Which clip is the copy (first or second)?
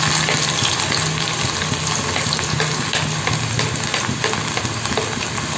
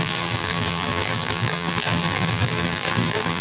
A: second